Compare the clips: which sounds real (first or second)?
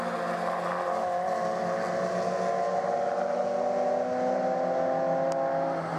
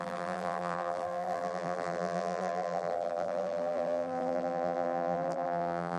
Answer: first